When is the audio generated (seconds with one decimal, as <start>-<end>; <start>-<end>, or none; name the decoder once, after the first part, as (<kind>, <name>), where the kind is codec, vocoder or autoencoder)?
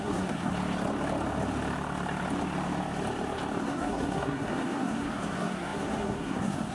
0.0-0.5 (codec, SNAC); 3.6-6.7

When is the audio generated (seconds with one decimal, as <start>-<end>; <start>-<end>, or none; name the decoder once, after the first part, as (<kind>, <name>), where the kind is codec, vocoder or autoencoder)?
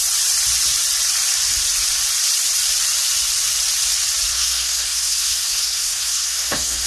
4.3-6.9 (codec, SNAC)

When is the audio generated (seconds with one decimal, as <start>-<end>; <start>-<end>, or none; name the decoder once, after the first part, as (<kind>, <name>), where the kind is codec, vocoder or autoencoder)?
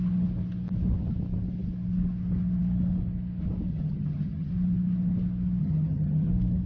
3.7-4.5 (vocoder, HiFi-GAN); 5.6-6.3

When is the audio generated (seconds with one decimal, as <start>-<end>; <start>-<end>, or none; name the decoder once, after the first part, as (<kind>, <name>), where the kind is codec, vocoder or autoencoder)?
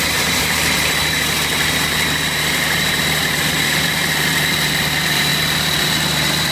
0.0-6.5 (vocoder, BigVGAN v2)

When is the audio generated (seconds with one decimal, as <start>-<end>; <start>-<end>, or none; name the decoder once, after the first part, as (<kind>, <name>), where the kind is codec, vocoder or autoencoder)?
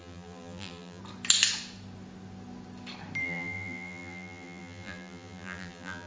0.0-1.0 (vocoder, BigVGAN v2); 3.2-6.1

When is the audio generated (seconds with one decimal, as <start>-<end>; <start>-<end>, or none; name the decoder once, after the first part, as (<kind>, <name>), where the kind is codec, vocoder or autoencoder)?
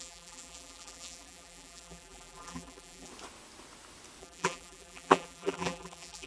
0.0-3.1 (vocoder, BigVGAN v2); 4.2-6.3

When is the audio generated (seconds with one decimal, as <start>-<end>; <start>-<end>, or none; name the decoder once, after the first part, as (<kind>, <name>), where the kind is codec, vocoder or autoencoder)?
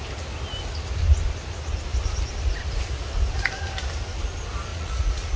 4.7-5.4 (vocoder, Vocos)